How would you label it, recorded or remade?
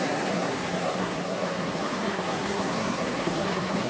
remade